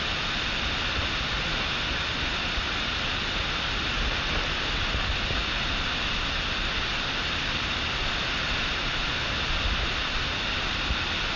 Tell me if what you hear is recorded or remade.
recorded